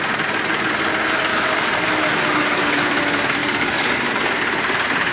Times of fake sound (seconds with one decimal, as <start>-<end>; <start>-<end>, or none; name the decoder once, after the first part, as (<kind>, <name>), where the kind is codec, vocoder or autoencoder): 1.3-2.8 (codec, DAC); 3.4-4.1